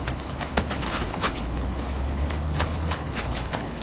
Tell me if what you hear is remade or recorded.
remade